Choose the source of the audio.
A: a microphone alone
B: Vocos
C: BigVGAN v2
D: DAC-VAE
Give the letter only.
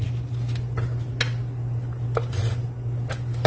A